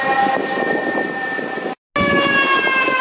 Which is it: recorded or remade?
recorded